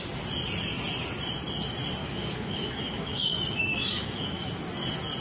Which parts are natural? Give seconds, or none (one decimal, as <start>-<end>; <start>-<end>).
0.0-2.0; 4.6-5.2